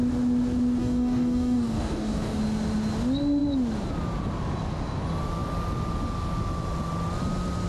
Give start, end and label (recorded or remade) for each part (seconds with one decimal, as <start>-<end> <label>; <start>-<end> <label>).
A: 0.0-0.8 recorded; 0.8-2.4 remade; 2.4-7.7 recorded